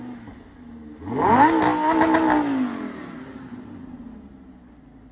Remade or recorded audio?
recorded